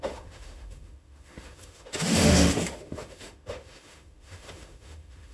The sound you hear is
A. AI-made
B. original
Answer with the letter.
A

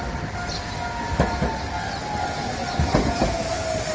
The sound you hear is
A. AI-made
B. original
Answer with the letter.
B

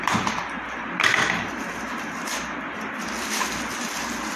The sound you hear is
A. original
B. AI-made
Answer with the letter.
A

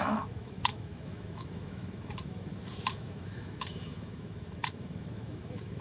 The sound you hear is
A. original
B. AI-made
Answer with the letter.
B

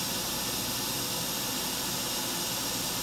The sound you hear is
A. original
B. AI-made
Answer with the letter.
A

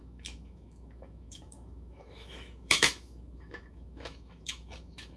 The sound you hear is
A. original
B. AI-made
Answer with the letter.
B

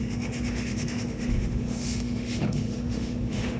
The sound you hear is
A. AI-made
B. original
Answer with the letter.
A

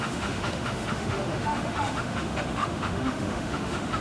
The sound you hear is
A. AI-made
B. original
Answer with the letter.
A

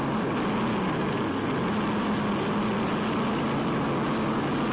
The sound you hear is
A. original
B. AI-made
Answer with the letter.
A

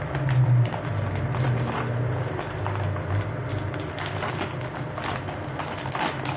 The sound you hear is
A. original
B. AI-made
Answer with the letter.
A